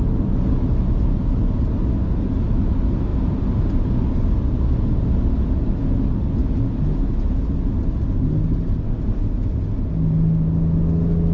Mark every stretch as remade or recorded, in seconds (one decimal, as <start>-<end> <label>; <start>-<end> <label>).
0.0-11.3 recorded